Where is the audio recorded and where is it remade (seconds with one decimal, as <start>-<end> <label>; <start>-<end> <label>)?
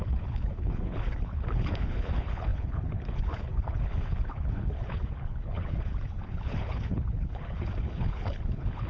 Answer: 0.0-8.9 remade